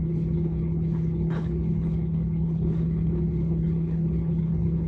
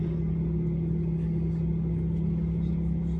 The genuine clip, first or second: second